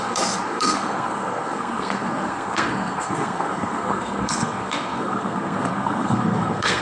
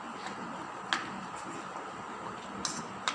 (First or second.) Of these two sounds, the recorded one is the second